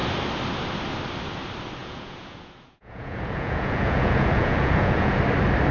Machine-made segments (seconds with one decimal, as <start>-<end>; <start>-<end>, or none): 1.8-5.2